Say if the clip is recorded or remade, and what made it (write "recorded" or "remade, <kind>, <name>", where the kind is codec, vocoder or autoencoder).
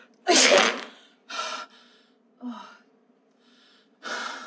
recorded